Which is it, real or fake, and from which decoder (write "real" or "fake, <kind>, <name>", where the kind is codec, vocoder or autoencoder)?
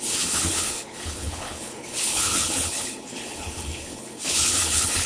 fake, codec, HILCodec